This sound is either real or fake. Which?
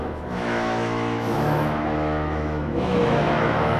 fake